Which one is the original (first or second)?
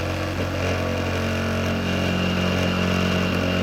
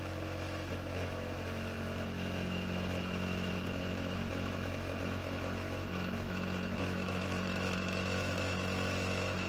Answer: first